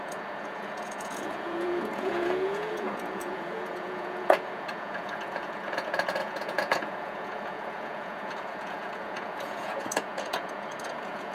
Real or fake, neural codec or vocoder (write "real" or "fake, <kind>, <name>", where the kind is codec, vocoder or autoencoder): fake, vocoder, Vocos